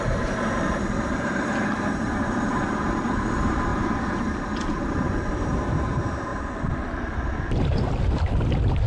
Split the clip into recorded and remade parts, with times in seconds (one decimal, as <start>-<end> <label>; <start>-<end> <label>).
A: 0.0-6.3 remade; 6.3-8.3 recorded; 8.3-8.9 remade